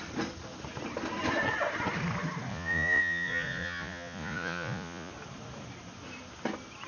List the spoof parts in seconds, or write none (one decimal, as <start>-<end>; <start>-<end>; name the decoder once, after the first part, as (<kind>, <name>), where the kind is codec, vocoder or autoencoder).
2.5-5.1 (vocoder, Vocos)